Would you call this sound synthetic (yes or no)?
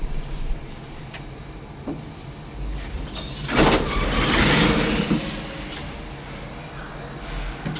no